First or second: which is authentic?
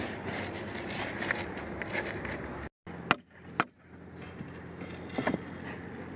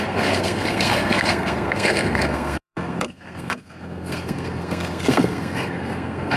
first